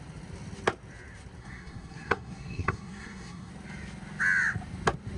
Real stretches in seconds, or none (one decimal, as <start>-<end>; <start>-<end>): 0.0-1.4; 3.5-5.2